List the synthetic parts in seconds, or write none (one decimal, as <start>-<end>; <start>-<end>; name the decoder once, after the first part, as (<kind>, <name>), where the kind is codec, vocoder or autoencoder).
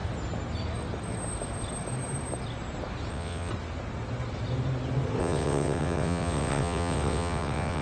3.1-3.5 (vocoder, WaveNeXt); 5.2-7.8